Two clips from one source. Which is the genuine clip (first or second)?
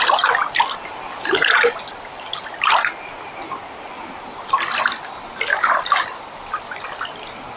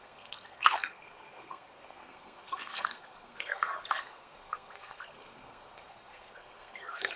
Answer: first